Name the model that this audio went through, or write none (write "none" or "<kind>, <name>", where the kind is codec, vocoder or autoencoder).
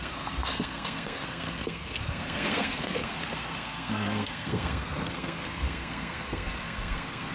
codec, SNAC